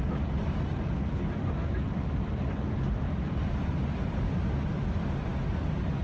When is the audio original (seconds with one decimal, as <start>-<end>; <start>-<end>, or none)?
0.0-6.0